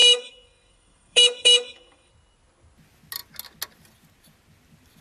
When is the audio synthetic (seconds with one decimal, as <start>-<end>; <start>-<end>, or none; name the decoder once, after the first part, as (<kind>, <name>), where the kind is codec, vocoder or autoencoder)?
0.0-2.1 (autoencoder, DAC-VAE)